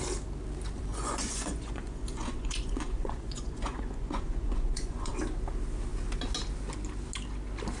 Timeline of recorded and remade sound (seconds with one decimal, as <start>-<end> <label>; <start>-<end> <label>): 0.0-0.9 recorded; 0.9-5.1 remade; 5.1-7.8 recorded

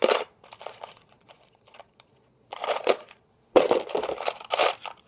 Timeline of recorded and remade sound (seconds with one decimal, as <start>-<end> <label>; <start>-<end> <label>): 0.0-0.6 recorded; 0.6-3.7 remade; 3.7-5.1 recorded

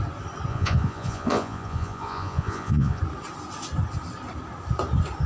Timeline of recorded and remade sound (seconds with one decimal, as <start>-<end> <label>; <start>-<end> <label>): 0.0-0.5 recorded; 0.5-3.0 remade; 3.0-5.3 recorded

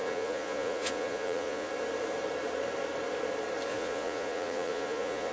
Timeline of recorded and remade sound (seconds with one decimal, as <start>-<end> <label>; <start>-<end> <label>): 0.0-1.7 remade; 1.7-3.7 recorded; 3.7-5.3 remade

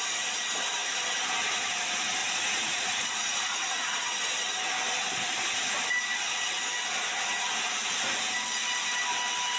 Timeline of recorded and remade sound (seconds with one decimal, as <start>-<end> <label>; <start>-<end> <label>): 0.0-2.2 recorded; 2.2-4.1 remade; 4.1-9.6 recorded